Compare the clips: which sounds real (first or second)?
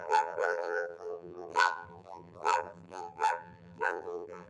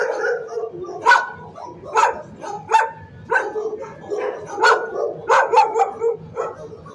second